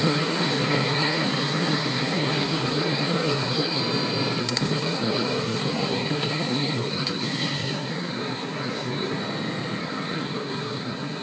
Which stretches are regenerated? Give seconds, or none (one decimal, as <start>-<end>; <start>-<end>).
0.0-3.8; 4.4-9.2; 9.8-11.2